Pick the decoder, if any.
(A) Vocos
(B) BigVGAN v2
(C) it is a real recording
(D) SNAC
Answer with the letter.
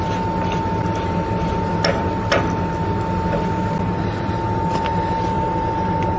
C